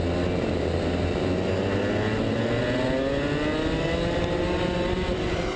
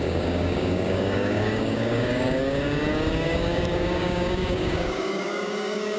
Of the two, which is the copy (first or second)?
second